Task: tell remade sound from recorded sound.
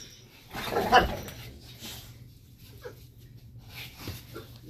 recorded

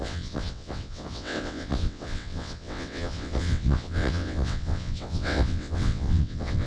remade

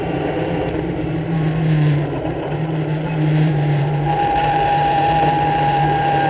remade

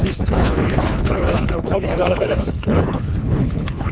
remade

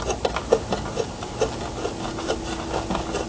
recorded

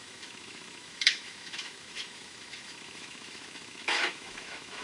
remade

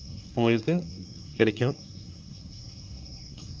remade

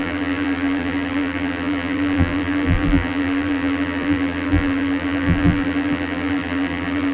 remade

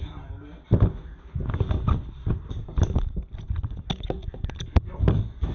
recorded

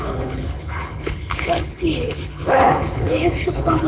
remade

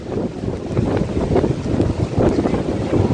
recorded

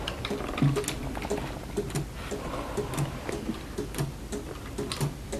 recorded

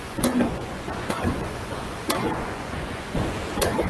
remade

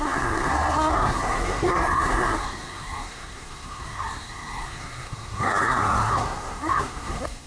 remade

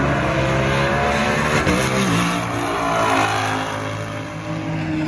recorded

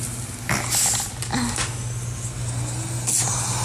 recorded